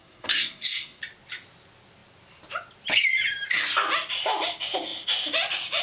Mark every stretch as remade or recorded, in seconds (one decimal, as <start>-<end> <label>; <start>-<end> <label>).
0.0-1.0 remade; 1.0-5.8 recorded